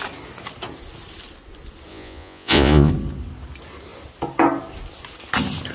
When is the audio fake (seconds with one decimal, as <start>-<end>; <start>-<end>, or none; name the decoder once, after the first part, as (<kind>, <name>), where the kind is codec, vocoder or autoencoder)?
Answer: 1.9-2.9 (vocoder, Vocos)